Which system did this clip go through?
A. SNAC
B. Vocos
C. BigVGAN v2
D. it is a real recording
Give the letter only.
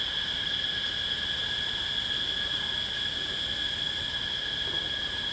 D